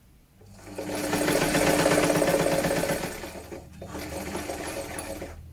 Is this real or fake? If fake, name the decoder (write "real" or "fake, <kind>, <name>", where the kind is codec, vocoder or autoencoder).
real